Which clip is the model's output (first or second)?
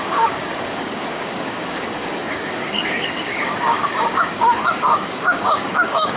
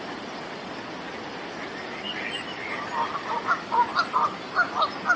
first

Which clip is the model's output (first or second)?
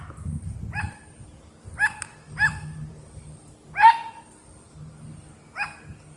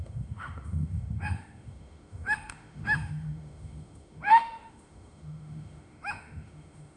second